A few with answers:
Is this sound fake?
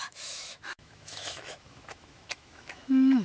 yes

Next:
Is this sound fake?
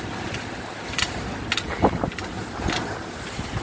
no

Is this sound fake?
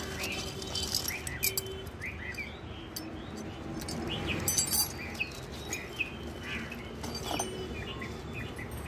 no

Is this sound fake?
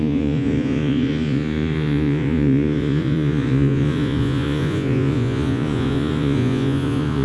yes